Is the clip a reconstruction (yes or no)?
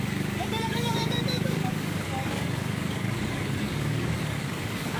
yes